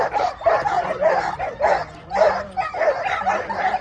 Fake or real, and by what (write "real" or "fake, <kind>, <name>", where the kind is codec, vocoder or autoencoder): real